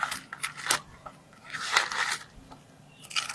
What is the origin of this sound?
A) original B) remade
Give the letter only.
A